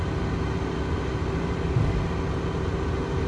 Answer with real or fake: real